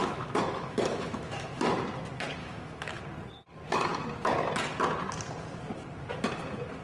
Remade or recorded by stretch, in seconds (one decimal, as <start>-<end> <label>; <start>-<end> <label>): 0.0-1.7 remade; 1.7-2.4 recorded; 2.4-3.0 remade; 3.0-6.8 recorded